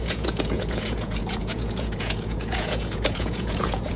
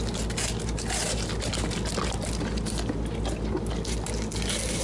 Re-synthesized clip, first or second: first